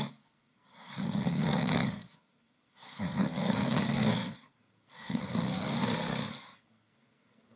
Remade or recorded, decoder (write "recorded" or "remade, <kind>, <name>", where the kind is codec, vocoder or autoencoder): remade, codec, SNAC